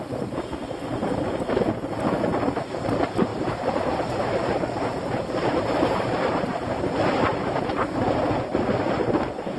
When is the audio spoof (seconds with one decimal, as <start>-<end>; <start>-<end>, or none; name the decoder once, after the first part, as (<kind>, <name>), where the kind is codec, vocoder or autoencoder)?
3.3-6.8 (vocoder, BigVGAN v2); 7.3-8.5